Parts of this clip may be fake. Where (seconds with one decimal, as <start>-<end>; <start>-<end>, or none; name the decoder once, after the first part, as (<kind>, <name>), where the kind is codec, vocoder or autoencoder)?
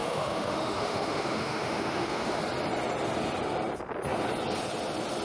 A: 0.0-2.4 (autoencoder, DAC-VAE)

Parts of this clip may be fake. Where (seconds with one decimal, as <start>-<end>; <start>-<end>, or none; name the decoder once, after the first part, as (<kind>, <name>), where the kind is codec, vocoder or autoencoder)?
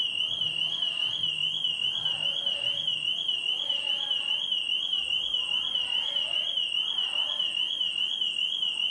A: none